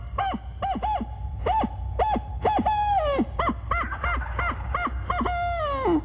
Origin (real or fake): real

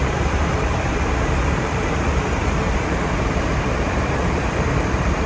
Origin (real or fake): fake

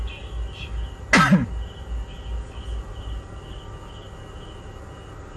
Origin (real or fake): real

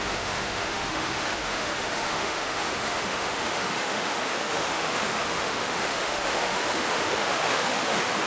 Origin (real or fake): fake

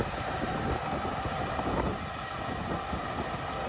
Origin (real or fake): real